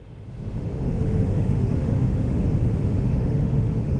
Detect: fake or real fake